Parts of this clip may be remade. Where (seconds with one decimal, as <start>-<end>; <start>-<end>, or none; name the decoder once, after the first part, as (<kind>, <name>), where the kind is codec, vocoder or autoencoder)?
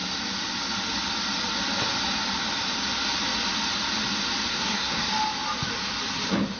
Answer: 4.5-5.1 (codec, SNAC)